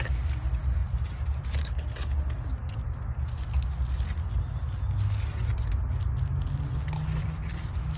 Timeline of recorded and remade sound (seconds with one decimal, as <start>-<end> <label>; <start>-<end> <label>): 0.0-0.8 recorded; 0.8-1.7 remade; 1.7-8.0 recorded